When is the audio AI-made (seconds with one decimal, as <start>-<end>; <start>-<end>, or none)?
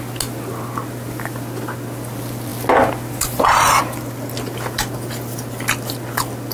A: none